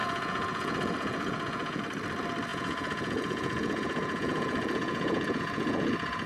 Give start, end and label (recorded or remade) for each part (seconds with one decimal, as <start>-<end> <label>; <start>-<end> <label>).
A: 0.0-1.8 remade; 1.8-2.5 recorded; 2.5-6.3 remade